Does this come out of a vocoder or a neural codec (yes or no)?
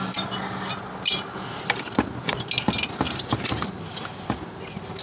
no